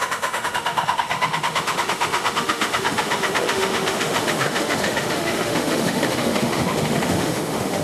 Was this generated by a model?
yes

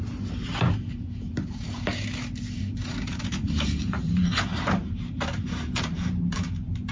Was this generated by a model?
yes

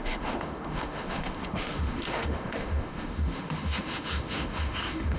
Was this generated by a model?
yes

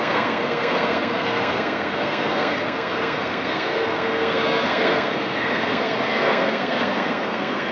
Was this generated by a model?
yes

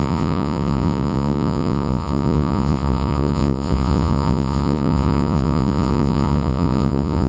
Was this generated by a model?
yes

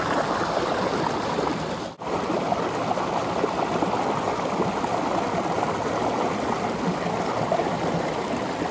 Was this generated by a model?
no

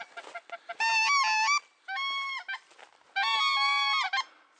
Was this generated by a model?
no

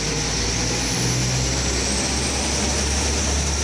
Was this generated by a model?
no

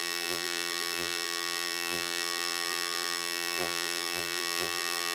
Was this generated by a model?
yes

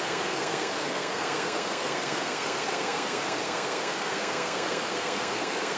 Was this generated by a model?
yes